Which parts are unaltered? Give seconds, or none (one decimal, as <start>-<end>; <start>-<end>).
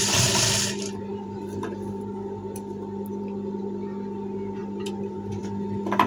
0.0-1.1; 3.6-6.1